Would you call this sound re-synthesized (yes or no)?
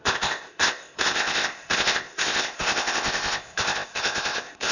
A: yes